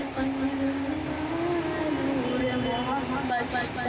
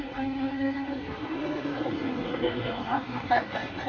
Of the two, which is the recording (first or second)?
first